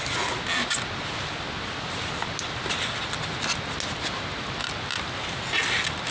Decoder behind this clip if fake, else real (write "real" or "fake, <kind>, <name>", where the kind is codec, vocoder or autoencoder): real